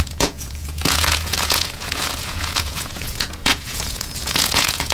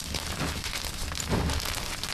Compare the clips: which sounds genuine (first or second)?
second